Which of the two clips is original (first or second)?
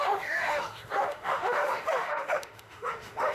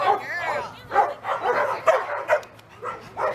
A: second